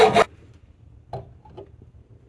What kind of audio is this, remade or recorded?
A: recorded